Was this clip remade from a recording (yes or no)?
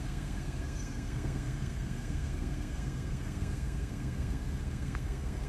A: yes